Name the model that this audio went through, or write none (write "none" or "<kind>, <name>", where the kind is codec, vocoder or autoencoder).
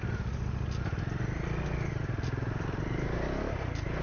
none